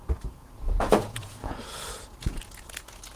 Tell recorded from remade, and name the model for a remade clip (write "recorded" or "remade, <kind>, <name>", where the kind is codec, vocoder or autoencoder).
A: remade, vocoder, Vocos